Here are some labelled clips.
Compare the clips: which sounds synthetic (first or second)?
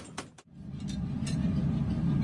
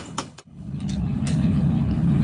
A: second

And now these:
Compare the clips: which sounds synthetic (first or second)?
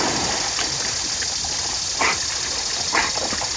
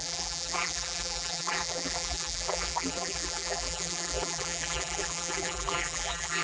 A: second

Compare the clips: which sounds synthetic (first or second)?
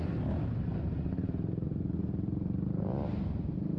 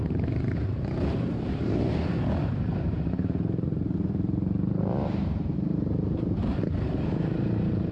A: second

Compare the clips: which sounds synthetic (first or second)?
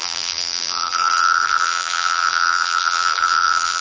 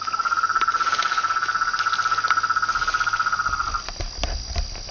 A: first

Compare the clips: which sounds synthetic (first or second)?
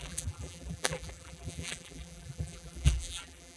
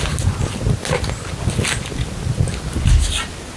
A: first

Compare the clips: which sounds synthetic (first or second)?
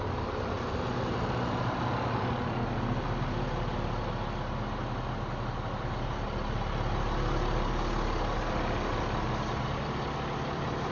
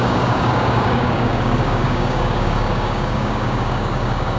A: second